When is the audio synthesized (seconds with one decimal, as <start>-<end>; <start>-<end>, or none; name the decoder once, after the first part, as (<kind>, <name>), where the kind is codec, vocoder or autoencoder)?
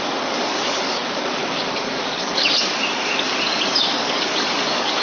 0.0-5.0 (codec, DAC)